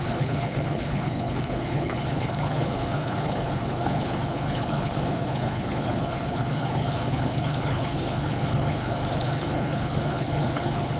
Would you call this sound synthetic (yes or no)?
yes